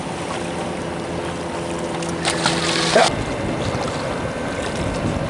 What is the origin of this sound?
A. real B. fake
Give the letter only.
A